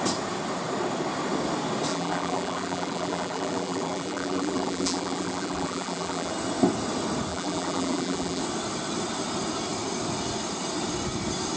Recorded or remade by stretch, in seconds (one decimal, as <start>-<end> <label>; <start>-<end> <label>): 0.0-1.9 recorded; 1.9-6.3 remade; 6.3-7.3 recorded; 7.3-8.4 remade; 8.4-11.6 recorded